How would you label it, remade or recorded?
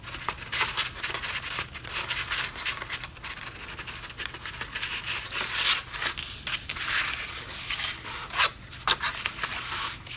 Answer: recorded